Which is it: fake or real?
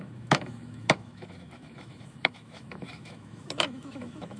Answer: fake